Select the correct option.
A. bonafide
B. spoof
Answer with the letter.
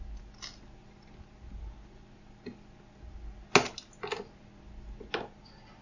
A